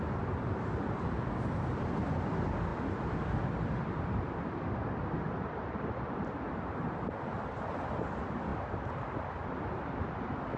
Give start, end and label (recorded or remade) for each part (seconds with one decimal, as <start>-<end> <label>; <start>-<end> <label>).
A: 0.0-10.6 recorded